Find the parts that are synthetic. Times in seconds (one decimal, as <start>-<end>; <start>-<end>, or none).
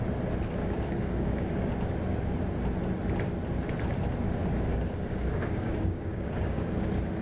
0.6-1.7; 4.7-6.7